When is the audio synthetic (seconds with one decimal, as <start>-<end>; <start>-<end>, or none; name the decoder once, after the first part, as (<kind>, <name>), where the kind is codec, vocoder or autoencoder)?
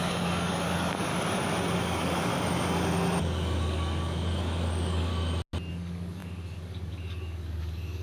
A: 0.0-1.1 (codec, DAC); 1.8-2.3; 3.2-5.1; 5.7-8.0